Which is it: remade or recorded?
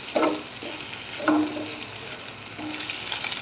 recorded